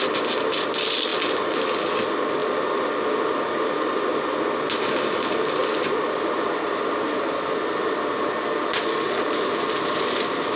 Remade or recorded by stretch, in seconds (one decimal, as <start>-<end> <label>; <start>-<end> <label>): 0.0-10.6 recorded